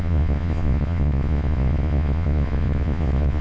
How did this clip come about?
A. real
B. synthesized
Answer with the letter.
B